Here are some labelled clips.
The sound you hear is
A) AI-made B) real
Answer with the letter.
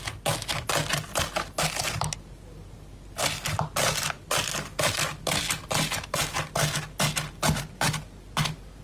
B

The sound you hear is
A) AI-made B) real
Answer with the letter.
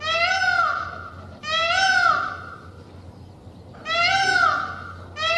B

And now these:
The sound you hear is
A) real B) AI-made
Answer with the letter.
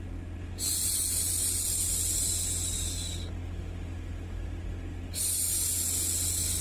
A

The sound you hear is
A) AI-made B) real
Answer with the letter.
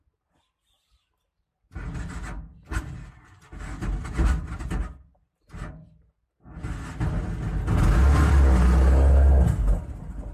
B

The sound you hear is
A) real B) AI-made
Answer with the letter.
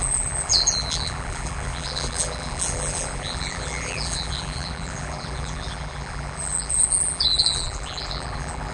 B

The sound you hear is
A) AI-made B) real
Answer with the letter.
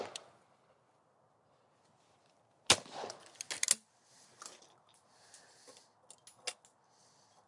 B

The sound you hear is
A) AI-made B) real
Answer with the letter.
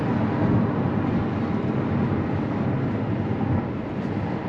B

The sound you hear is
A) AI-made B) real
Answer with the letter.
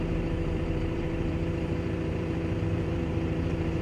A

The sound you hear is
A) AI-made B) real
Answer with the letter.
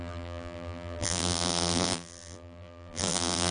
A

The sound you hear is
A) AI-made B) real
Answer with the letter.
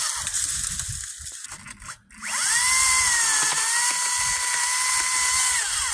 B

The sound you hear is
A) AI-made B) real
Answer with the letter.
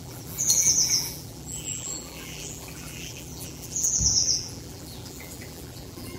A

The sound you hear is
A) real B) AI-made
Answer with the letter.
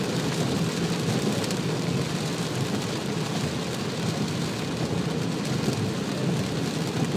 A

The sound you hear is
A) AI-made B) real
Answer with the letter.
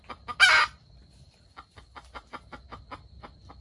B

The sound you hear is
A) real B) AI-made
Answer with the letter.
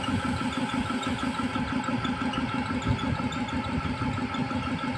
A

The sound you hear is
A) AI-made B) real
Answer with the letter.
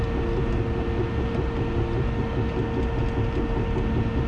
B